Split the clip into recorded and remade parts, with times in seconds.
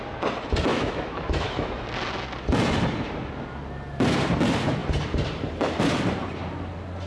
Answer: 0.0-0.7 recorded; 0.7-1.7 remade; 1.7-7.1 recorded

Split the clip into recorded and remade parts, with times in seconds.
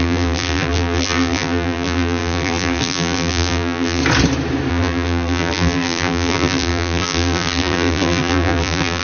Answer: 0.0-4.0 remade; 4.0-4.7 recorded; 4.7-9.0 remade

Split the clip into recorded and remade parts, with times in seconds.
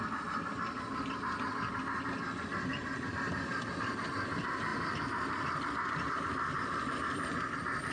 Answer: 0.0-7.9 recorded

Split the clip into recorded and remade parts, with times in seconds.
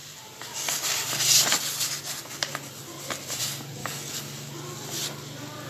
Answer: 0.0-3.8 recorded; 3.8-4.5 remade; 4.5-5.7 recorded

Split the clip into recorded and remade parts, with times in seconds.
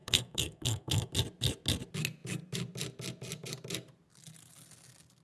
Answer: 0.0-1.1 remade; 1.1-5.2 recorded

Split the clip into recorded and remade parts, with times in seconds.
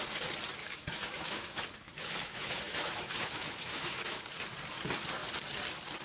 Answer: 0.0-0.6 recorded; 0.6-4.2 remade; 4.2-6.0 recorded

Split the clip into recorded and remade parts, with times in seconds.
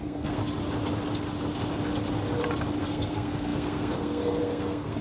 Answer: 0.0-0.4 remade; 0.4-2.8 recorded; 2.8-5.0 remade